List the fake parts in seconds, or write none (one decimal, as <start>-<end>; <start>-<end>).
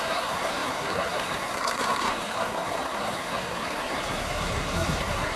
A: 0.0-5.4